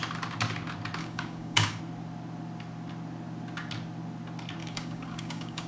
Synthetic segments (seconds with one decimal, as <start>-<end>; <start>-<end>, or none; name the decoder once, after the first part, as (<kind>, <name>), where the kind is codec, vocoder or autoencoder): 1.0-1.8 (codec, DAC); 4.6-5.7

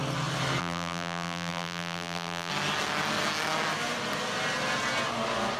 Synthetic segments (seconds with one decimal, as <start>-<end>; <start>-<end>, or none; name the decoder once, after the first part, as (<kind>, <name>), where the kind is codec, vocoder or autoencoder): 0.6-2.5 (vocoder, BigVGAN v2)

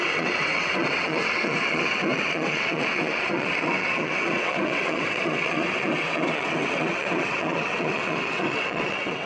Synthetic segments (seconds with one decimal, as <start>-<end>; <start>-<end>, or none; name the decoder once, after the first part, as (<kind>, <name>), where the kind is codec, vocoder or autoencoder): 0.0-9.3 (vocoder, WaveNeXt)

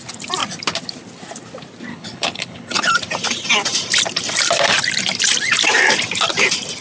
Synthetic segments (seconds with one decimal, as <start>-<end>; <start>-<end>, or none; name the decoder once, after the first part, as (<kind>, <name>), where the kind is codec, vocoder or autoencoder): 1.9-2.9 (codec, HILCodec)

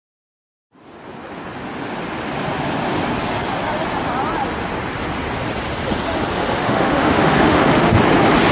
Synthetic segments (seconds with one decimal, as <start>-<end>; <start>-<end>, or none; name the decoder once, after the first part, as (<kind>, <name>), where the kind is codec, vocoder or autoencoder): 6.4-8.0 (autoencoder, DAC-VAE)